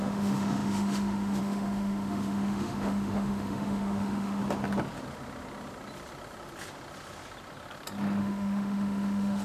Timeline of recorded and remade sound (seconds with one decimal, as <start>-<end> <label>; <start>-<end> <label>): 0.0-4.4 remade; 4.4-8.2 recorded; 8.2-9.4 remade